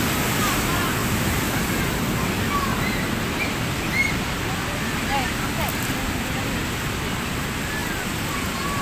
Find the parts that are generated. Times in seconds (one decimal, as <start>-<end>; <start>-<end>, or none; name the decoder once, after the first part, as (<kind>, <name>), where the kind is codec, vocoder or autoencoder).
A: none